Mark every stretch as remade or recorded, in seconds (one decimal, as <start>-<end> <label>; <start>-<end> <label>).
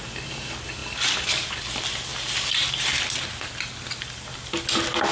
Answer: 0.0-5.1 recorded